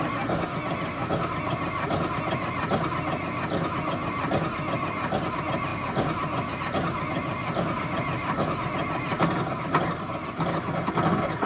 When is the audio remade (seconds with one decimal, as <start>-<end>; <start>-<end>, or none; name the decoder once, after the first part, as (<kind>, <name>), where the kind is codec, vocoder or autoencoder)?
none